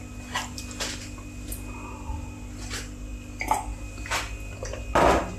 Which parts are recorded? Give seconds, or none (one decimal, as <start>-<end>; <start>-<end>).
0.0-5.4